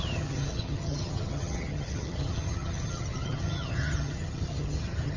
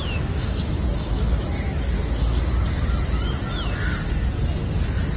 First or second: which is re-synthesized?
first